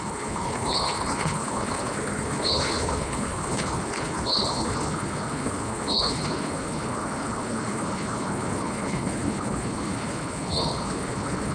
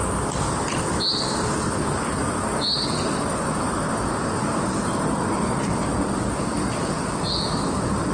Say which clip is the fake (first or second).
first